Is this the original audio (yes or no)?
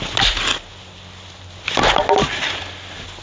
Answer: yes